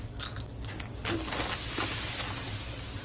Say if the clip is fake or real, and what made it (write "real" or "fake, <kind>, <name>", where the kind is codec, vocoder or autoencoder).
real